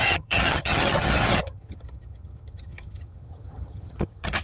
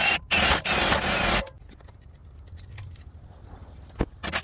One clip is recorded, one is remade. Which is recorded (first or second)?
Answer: second